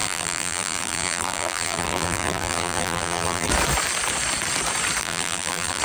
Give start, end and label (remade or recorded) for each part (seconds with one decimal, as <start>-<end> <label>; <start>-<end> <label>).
0.0-3.5 remade; 3.5-5.0 recorded; 5.0-5.8 remade

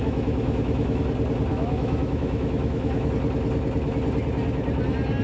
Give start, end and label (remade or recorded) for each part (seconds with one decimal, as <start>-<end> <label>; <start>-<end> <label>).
0.0-1.0 remade; 1.0-1.5 recorded; 1.5-3.1 remade; 3.1-5.2 recorded